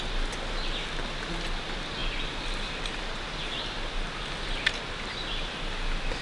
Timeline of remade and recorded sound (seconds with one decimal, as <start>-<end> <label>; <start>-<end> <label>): 0.0-6.2 recorded